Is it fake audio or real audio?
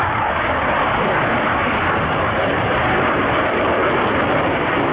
real